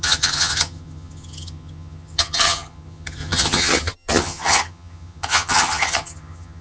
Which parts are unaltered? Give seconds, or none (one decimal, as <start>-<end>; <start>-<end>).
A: none